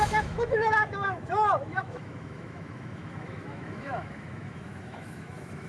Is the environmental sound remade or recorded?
remade